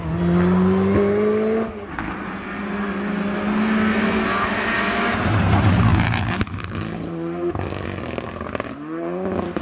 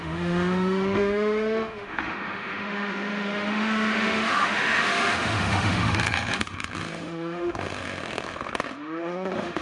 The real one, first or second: first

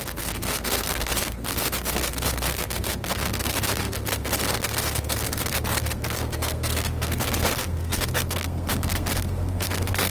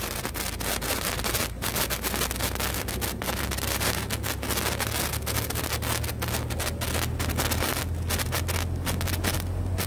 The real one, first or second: second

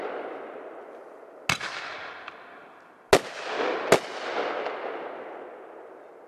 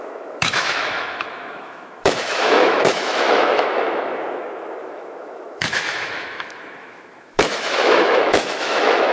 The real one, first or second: first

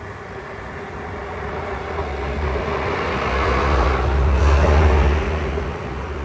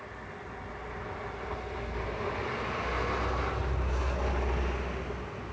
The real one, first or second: second